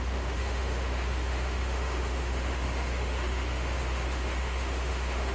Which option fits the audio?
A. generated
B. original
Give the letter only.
A